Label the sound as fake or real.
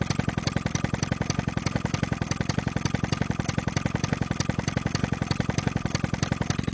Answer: real